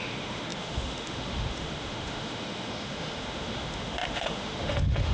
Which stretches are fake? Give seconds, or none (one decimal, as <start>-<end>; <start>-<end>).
0.0-5.1